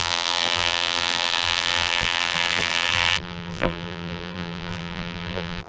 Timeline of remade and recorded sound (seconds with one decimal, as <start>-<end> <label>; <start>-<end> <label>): 0.0-5.7 remade